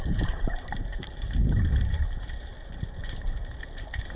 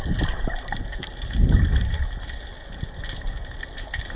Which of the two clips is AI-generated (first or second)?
first